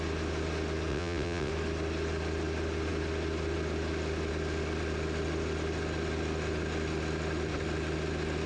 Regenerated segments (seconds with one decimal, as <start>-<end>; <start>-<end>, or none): 0.9-1.5

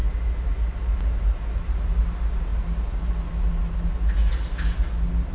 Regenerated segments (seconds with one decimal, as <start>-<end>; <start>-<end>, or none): none

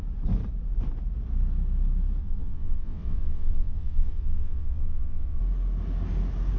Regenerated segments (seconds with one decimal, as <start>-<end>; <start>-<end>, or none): 2.2-5.4

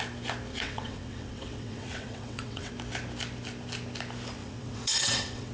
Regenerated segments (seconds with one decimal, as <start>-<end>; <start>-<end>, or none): 0.5-2.7; 4.4-5.5

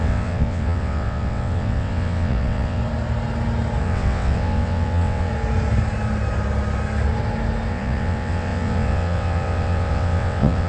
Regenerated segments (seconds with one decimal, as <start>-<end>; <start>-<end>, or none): 0.0-2.8; 3.8-5.3; 7.7-10.7

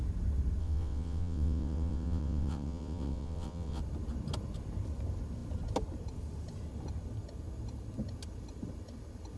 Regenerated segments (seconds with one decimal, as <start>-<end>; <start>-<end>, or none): 0.6-3.8